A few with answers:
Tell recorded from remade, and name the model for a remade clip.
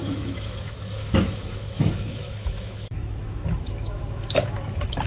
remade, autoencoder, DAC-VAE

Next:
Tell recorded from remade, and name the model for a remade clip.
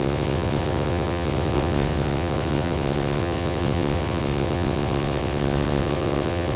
remade, vocoder, WaveNeXt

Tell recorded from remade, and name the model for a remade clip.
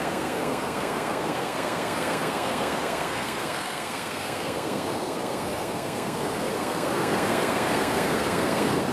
remade, codec, SNAC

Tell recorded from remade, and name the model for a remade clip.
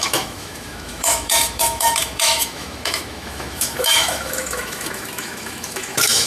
remade, autoencoder, DAC-VAE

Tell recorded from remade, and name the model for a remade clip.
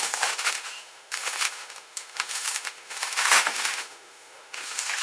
remade, autoencoder, DAC-VAE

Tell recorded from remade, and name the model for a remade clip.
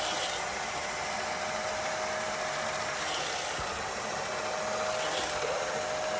recorded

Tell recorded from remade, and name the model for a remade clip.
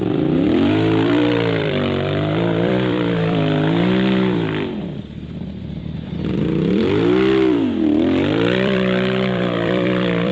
remade, vocoder, BigVGAN v2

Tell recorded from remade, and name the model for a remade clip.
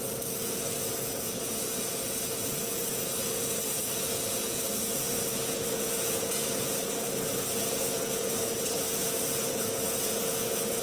remade, vocoder, Vocos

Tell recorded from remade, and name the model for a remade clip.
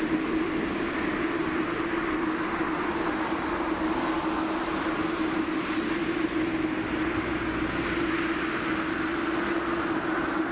recorded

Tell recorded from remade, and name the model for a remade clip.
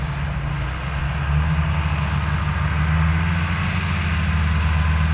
recorded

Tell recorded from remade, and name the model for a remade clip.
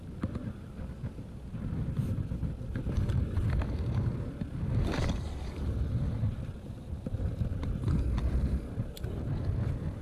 recorded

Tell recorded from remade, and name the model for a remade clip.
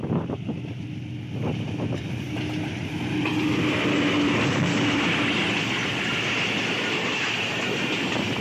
recorded